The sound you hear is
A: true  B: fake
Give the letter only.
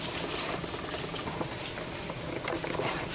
A